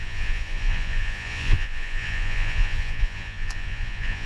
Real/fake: fake